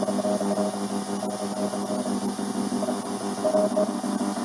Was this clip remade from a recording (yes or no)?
no